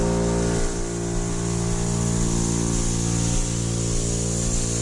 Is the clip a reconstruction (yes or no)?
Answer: no